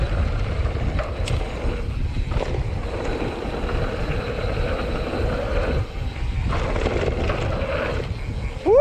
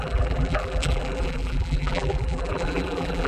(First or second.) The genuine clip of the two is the first